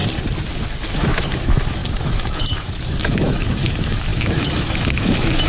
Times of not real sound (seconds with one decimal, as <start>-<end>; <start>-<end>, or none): 0.9-5.5